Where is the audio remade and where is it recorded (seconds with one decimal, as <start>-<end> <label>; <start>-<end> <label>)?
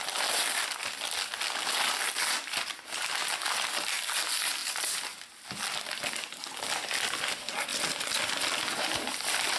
0.0-7.7 recorded; 7.7-8.3 remade; 8.3-9.6 recorded